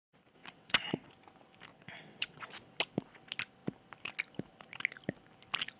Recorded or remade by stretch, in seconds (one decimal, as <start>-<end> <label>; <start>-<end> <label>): 0.0-0.4 recorded; 0.4-1.1 remade; 1.1-1.7 recorded; 1.7-2.5 remade; 2.5-5.8 recorded

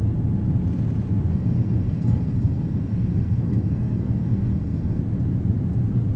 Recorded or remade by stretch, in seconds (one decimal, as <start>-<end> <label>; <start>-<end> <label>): 0.0-1.3 recorded; 1.3-5.0 remade; 5.0-6.2 recorded

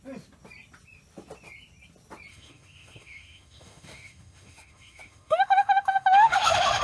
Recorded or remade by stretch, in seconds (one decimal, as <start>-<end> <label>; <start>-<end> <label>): 0.0-2.3 recorded; 2.3-6.8 remade